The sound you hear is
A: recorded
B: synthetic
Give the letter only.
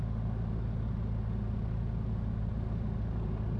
A